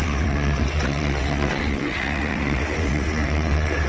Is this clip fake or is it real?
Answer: fake